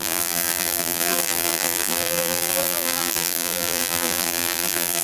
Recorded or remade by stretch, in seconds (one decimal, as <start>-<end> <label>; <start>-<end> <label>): 0.0-5.0 remade